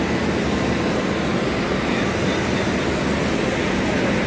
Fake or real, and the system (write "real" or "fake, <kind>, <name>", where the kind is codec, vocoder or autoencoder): real